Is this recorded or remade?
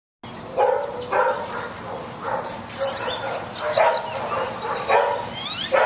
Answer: recorded